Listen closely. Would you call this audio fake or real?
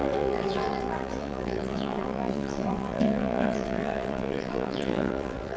fake